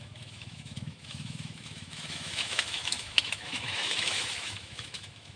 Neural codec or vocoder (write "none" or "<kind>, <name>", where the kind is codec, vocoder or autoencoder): autoencoder, DAC-VAE